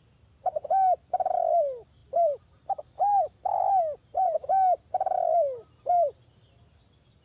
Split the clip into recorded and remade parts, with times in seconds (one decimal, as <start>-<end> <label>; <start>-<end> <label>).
0.0-7.2 recorded